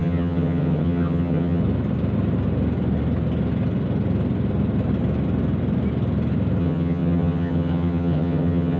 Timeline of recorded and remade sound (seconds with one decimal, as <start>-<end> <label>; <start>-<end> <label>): 0.0-1.6 remade; 1.6-6.6 recorded; 6.6-8.8 remade